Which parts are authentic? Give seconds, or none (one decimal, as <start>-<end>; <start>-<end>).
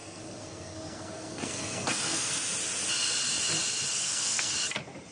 2.3-3.9; 4.5-5.1